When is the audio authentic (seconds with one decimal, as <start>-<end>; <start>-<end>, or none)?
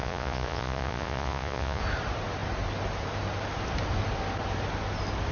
1.8-5.3